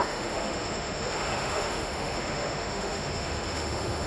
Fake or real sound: fake